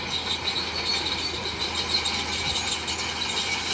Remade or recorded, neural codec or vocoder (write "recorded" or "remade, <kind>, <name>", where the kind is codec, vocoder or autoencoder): recorded